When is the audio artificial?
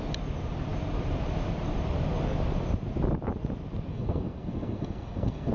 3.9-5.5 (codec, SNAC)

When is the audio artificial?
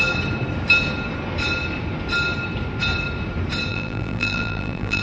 3.7-5.0 (vocoder, BigVGAN v2)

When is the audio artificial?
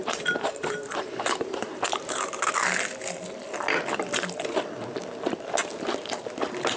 0.0-2.5 (vocoder, BigVGAN v2)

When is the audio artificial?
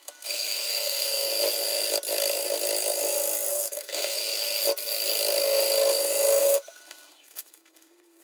0.0-1.3 (codec, SNAC); 3.5-4.2; 6.4-8.2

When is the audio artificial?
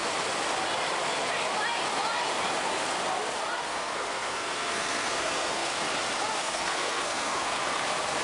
3.7-5.7 (codec, SNAC); 6.4-7.6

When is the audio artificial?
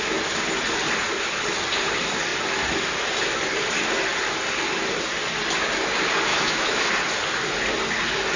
6.3-6.9 (autoencoder, DAC-VAE)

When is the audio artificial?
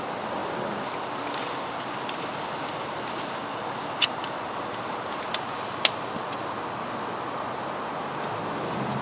none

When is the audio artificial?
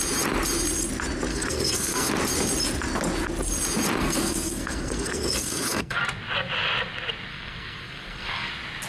1.3-2.1 (codec, SNAC); 4.0-6.0; 7.3-8.5